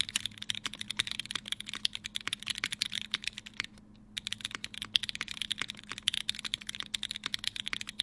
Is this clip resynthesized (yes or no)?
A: no